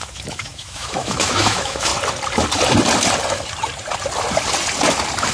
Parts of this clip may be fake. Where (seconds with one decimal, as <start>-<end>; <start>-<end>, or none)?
0.0-1.9